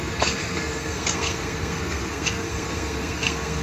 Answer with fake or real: fake